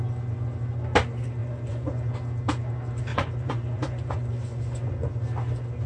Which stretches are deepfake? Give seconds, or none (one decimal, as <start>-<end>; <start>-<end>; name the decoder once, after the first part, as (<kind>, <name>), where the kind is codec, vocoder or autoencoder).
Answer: 1.4-2.1 (vocoder, Vocos); 3.1-5.1